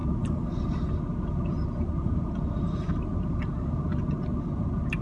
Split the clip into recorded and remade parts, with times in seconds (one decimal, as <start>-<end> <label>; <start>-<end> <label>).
0.0-5.0 recorded